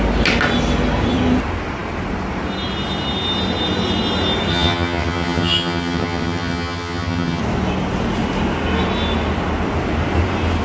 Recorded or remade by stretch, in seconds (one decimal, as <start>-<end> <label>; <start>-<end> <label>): 0.0-4.5 recorded; 4.5-7.4 remade; 7.4-10.6 recorded